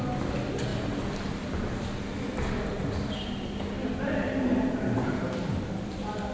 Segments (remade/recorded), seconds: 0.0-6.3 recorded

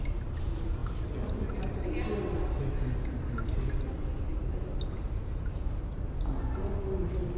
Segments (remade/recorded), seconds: 0.0-7.4 recorded

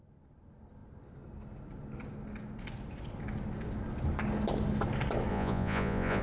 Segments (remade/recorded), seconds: 0.0-5.3 recorded; 5.3-6.2 remade

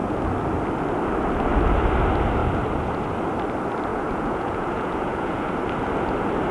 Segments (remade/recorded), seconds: 0.0-3.9 recorded; 3.9-5.5 remade; 5.5-6.5 recorded

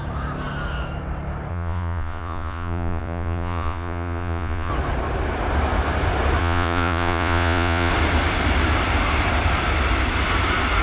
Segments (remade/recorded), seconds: 0.0-1.5 recorded; 1.5-4.7 remade; 4.7-6.4 recorded; 6.4-7.9 remade; 7.9-10.8 recorded

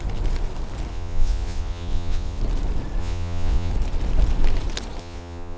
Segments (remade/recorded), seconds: 0.0-0.9 recorded; 0.9-2.4 remade; 2.4-3.0 recorded; 3.0-3.7 remade; 3.7-5.0 recorded; 5.0-5.6 remade

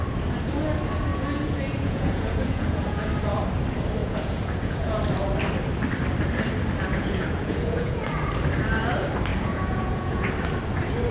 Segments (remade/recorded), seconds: 0.0-1.1 recorded; 1.1-3.1 remade; 3.1-4.0 recorded; 4.0-5.0 remade; 5.0-6.9 recorded; 6.9-8.3 remade; 8.3-9.3 recorded; 9.3-10.3 remade; 10.3-11.1 recorded

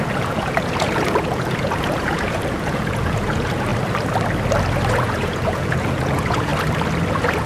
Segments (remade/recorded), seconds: 0.0-3.7 remade; 3.7-4.9 recorded; 4.9-6.5 remade; 6.5-7.1 recorded; 7.1-7.5 remade